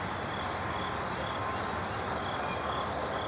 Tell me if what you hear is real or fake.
real